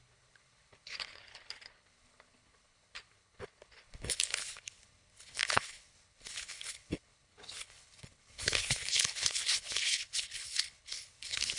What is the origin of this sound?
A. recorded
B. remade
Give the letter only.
B